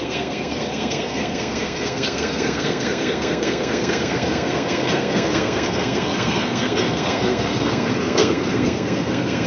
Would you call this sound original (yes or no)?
no